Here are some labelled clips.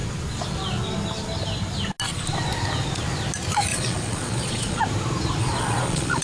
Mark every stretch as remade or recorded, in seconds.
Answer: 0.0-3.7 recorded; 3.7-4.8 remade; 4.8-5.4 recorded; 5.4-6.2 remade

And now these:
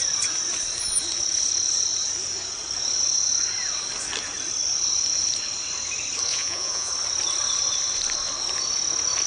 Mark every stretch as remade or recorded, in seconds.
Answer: 0.0-6.3 recorded; 6.3-6.9 remade; 6.9-9.3 recorded

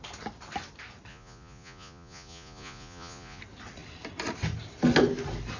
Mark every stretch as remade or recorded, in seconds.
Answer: 0.0-1.1 recorded; 1.1-3.4 remade; 3.4-5.6 recorded

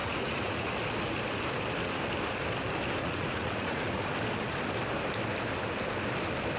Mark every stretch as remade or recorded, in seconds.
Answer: 0.0-0.7 remade; 0.7-3.0 recorded; 3.0-4.1 remade; 4.1-6.6 recorded